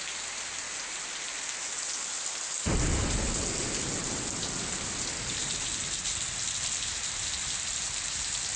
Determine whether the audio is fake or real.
real